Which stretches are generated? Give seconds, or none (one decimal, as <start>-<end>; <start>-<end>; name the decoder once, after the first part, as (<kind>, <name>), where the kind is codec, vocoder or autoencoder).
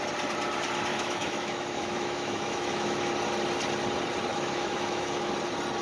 0.9-3.1 (autoencoder, DAC-VAE); 4.3-5.3